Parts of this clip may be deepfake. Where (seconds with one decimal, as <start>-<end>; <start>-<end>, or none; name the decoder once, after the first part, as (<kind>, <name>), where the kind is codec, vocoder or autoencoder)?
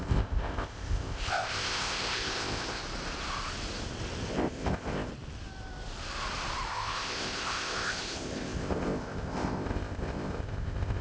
0.0-2.8 (codec, ZipCodec); 4.3-5.1; 6.7-11.0